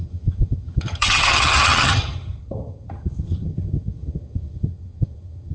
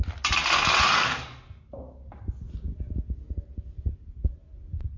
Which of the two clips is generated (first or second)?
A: first